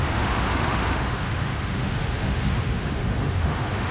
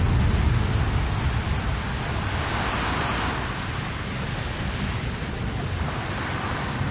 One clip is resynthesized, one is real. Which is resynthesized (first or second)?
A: first